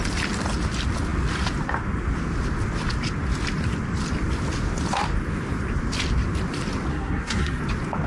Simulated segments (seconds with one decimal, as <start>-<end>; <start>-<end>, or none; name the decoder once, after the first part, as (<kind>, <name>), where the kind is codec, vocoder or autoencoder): 6.9-7.6 (codec, SNAC)